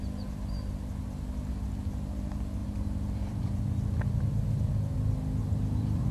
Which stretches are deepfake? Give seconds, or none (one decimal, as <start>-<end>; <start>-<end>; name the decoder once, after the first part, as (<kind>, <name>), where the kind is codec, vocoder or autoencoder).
2.6-3.6 (vocoder, BigVGAN v2); 5.4-6.1